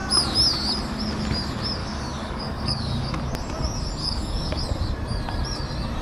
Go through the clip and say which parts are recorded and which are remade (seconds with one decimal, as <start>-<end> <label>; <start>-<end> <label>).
0.0-1.8 recorded; 1.8-3.2 remade; 3.2-4.0 recorded; 4.0-4.6 remade; 4.6-6.0 recorded